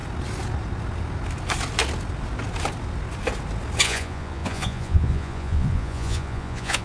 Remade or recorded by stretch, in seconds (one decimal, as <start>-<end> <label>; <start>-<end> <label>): 0.0-3.8 recorded; 3.8-6.8 remade